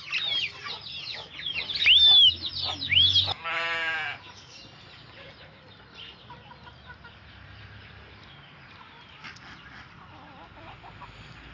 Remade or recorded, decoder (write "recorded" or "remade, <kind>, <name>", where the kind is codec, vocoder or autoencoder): recorded